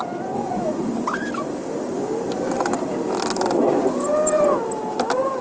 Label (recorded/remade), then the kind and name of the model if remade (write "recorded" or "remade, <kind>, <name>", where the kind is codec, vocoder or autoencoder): recorded